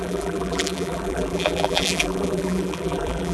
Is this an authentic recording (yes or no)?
no